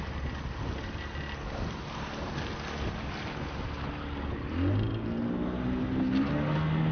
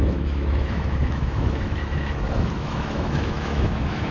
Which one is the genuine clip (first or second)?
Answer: first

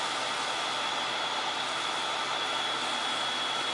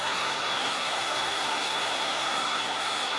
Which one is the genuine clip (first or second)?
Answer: first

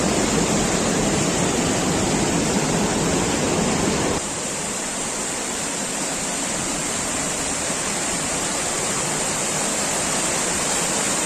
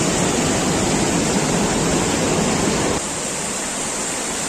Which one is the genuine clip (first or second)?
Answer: second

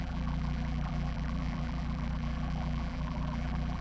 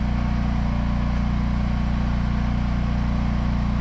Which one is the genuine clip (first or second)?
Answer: second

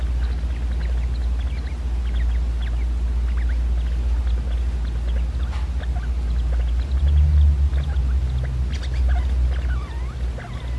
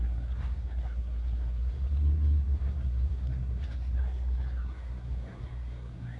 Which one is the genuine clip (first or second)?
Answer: first